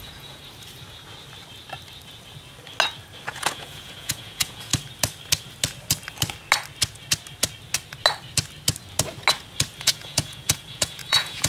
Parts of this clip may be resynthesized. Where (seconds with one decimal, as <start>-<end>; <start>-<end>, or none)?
0.0-0.4; 3.3-4.7; 9.8-11.5